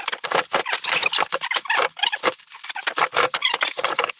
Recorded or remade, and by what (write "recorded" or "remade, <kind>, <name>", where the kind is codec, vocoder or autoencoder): recorded